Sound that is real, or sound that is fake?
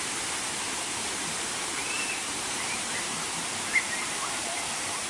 fake